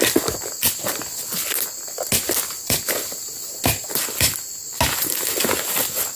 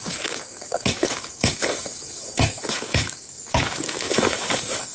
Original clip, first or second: first